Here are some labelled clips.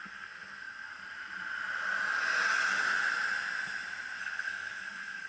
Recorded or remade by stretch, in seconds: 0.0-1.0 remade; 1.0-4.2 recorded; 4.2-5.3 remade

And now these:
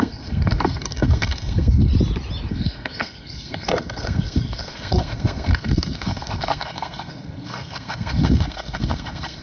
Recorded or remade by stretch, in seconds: 0.0-1.9 remade; 1.9-2.5 recorded; 2.5-9.4 remade

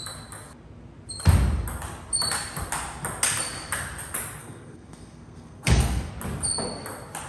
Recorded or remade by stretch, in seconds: 0.0-4.4 recorded; 4.4-6.1 remade; 6.1-7.3 recorded

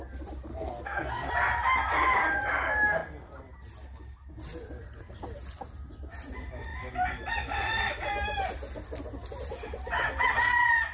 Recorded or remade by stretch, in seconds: 0.0-0.5 recorded; 0.5-1.3 remade; 1.3-10.9 recorded

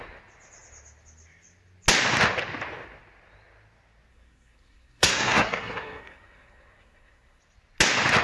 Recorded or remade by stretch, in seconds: 0.0-4.1 recorded; 4.1-7.4 remade; 7.4-8.2 recorded

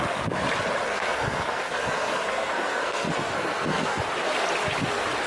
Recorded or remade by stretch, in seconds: 0.0-0.8 recorded; 0.8-4.0 remade; 4.0-5.3 recorded

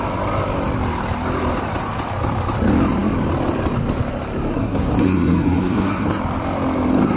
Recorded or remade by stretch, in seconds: 0.0-4.5 recorded; 4.5-6.2 remade; 6.2-7.2 recorded